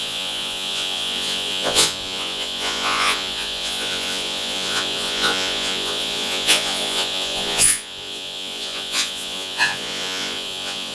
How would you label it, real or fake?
fake